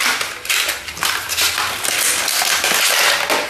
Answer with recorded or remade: recorded